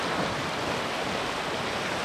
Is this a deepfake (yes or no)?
no